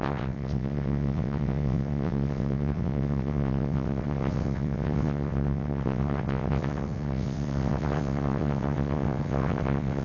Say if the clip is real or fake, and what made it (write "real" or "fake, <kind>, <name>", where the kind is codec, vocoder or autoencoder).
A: fake, vocoder, WaveNeXt